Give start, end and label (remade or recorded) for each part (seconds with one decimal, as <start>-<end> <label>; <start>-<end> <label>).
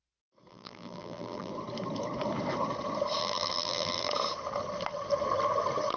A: 0.0-0.5 recorded; 0.5-1.5 remade; 1.5-3.2 recorded; 3.2-4.1 remade; 4.1-6.0 recorded